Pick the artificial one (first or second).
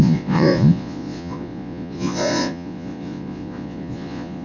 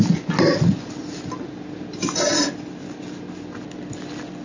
first